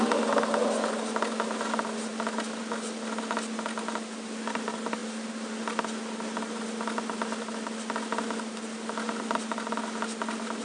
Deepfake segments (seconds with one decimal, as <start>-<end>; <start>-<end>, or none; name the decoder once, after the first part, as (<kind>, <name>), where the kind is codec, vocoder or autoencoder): none